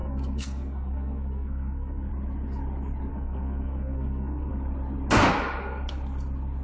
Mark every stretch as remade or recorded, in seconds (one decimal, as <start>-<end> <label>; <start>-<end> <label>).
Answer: 0.0-2.1 remade; 2.1-3.1 recorded; 3.1-4.5 remade; 4.5-6.6 recorded